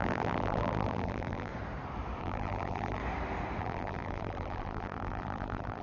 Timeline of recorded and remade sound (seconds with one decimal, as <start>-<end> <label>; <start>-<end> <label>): 0.0-1.5 remade; 1.5-2.2 recorded; 2.2-3.0 remade; 3.0-3.6 recorded; 3.6-5.8 remade